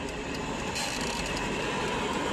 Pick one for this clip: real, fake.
fake